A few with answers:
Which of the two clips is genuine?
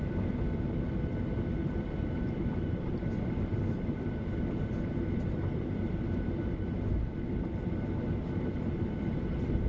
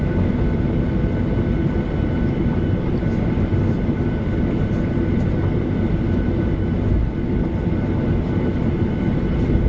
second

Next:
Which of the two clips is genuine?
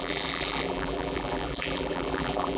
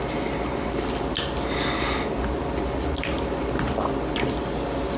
second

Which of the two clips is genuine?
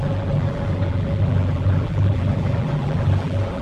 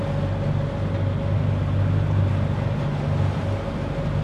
second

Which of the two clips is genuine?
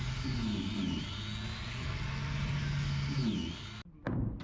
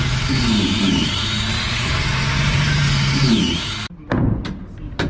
first